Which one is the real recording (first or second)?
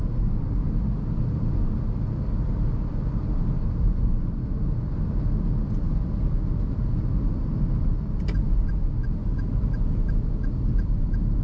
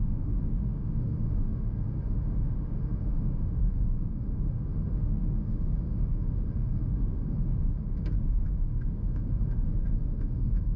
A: first